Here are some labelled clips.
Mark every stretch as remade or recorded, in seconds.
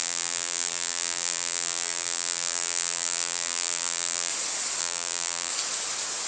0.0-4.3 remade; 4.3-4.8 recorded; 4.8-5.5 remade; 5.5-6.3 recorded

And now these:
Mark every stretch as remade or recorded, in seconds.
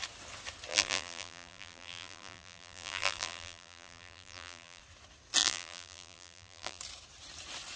0.0-0.7 recorded; 0.7-4.8 remade; 4.8-5.4 recorded; 5.4-6.8 remade; 6.8-7.8 recorded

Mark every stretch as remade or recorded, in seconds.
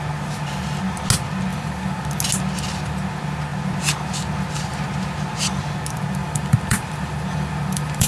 0.0-1.5 recorded; 1.5-2.0 remade; 2.0-6.2 recorded; 6.2-8.1 remade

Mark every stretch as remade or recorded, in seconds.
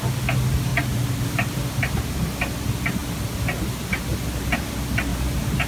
0.0-0.7 recorded; 0.7-2.2 remade; 2.2-5.1 recorded; 5.1-5.7 remade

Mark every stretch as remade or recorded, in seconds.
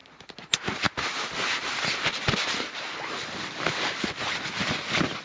0.0-5.2 recorded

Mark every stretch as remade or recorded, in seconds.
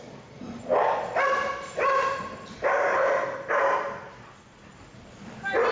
0.0-5.7 remade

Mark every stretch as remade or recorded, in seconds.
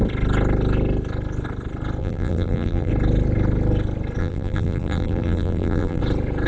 0.0-2.0 recorded; 2.0-2.9 remade; 2.9-4.2 recorded; 4.2-6.0 remade; 6.0-6.5 recorded